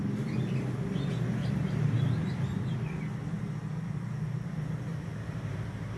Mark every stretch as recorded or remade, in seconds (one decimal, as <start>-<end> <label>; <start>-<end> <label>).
0.0-1.4 recorded; 1.4-3.0 remade; 3.0-4.9 recorded; 4.9-6.0 remade